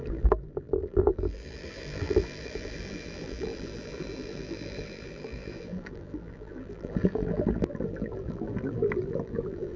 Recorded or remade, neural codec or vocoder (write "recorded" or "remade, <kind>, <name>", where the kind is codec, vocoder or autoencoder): remade, vocoder, BigVGAN v2